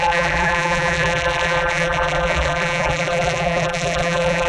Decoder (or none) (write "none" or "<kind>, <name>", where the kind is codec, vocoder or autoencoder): vocoder, BigVGAN v2